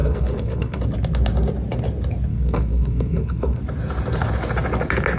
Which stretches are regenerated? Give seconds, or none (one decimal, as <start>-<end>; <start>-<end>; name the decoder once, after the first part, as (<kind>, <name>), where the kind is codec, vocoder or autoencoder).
0.0-0.8 (codec, SNAC); 2.3-3.6